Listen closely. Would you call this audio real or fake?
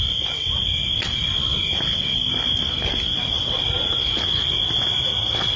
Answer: real